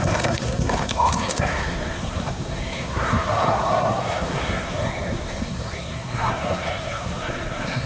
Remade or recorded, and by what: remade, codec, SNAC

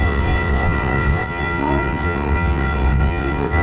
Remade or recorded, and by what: remade, vocoder, WaveNeXt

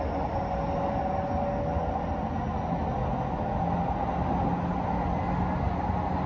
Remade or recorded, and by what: recorded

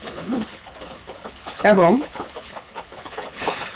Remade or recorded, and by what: remade, codec, HILCodec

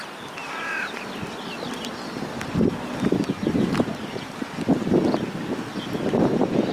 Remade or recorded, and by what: recorded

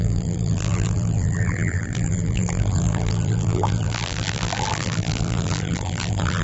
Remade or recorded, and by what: remade, vocoder, BigVGAN v2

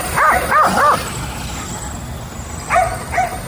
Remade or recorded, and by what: recorded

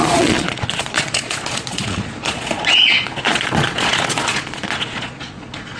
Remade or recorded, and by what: remade, vocoder, Vocos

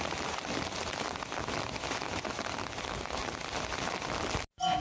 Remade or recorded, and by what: recorded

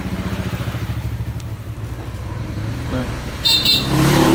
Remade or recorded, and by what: remade, vocoder, BigVGAN v2